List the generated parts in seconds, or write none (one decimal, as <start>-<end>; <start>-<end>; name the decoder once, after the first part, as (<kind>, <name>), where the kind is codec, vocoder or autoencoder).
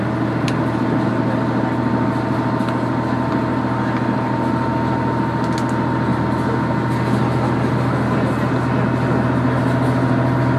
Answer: none